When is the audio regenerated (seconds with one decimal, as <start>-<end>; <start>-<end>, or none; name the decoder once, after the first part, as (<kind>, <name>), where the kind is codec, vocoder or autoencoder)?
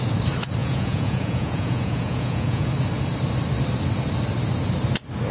0.6-2.7 (vocoder, Vocos)